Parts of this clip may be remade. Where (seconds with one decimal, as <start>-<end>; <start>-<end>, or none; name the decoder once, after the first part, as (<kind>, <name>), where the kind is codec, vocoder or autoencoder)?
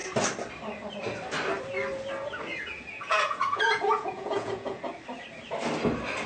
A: 2.5-4.8 (vocoder, Vocos)